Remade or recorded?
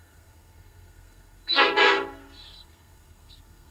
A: remade